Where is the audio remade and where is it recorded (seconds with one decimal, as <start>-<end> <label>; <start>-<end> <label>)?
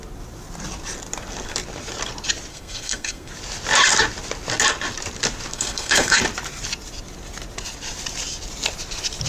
0.0-2.5 recorded; 2.5-3.3 remade; 3.3-5.5 recorded; 5.5-6.2 remade; 6.2-9.3 recorded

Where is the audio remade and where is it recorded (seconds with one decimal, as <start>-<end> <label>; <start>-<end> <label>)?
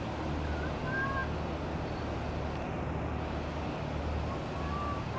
0.0-5.2 recorded